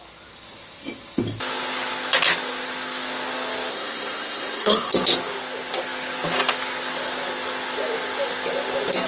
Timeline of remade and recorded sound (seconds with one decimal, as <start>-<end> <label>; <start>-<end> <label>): 0.0-3.7 recorded; 3.7-4.9 remade; 4.9-9.1 recorded